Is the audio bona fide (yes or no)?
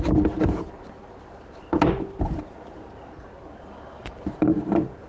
yes